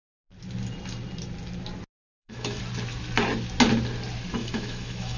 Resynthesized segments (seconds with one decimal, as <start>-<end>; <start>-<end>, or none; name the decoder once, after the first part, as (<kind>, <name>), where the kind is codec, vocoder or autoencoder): 2.0-2.6 (autoencoder, DAC-VAE); 4.4-5.2